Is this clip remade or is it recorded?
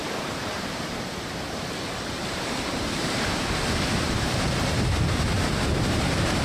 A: remade